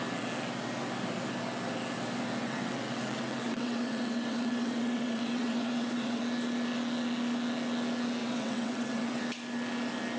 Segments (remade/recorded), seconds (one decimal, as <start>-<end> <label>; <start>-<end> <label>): 0.0-2.4 recorded; 2.4-6.2 remade; 6.2-8.2 recorded; 8.2-9.2 remade; 9.2-10.2 recorded